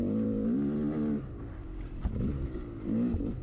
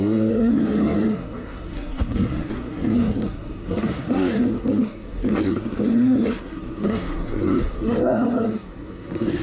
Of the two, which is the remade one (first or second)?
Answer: second